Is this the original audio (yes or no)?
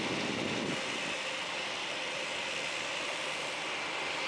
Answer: yes